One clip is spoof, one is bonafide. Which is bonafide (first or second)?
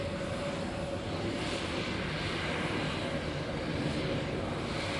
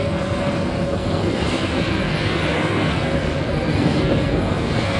first